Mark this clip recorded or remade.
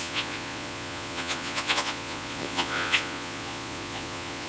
remade